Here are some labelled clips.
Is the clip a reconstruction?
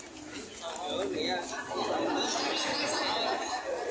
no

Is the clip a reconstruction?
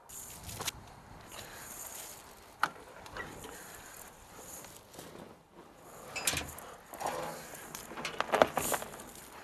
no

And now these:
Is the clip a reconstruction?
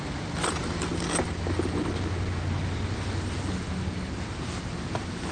no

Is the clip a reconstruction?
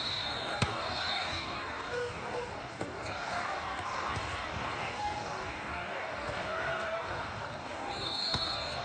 yes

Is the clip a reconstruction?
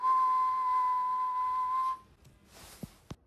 no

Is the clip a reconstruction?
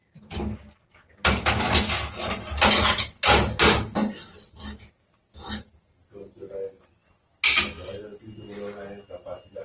no